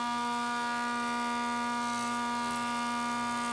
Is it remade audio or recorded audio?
recorded